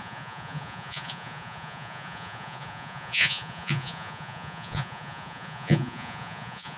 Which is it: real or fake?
fake